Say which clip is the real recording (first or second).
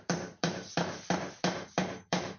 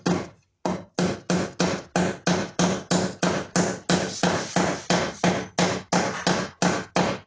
second